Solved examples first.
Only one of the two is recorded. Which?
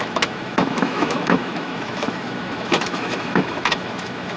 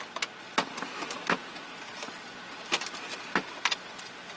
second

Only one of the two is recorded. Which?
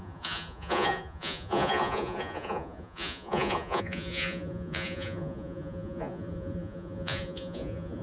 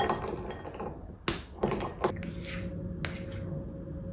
second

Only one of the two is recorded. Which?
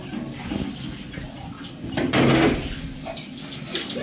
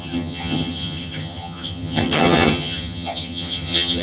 first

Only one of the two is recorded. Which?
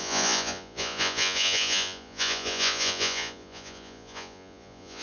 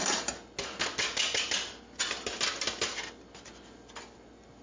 second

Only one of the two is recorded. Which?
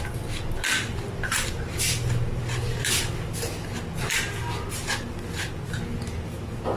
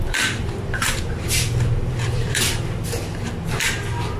first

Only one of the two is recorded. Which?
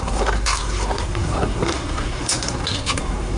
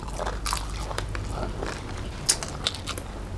second